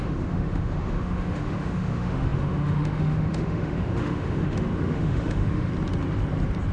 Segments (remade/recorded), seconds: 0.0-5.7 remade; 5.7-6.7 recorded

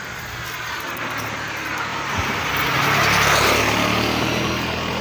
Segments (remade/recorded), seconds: 0.0-5.0 recorded

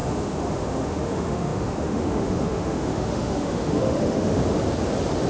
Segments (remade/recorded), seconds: 0.0-4.4 remade; 4.4-5.3 recorded

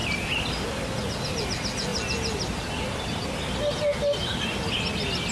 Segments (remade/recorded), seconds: 0.0-5.3 recorded